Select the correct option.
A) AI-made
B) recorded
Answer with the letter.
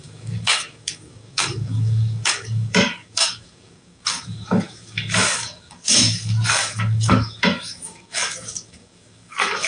A